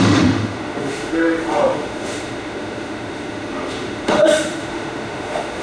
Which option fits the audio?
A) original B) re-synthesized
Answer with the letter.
B